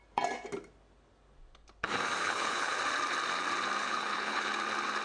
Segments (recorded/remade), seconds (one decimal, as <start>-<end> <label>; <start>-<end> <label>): 0.0-2.2 recorded; 2.2-2.8 remade; 2.8-3.8 recorded; 3.8-4.5 remade; 4.5-5.0 recorded

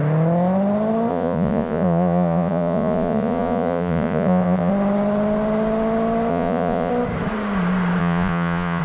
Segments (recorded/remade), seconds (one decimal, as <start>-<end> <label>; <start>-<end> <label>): 0.0-1.1 recorded; 1.1-4.7 remade; 4.7-6.3 recorded; 6.3-6.9 remade; 6.9-8.0 recorded; 8.0-8.8 remade

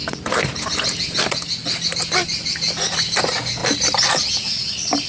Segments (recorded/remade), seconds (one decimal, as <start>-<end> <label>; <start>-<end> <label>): 0.0-5.1 recorded